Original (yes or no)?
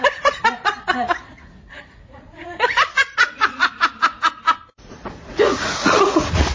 no